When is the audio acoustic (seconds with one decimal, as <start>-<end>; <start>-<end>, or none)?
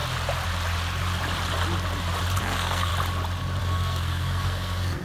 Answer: 0.0-2.4; 2.9-3.6